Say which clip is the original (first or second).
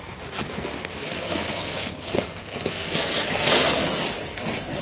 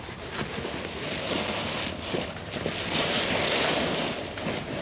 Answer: second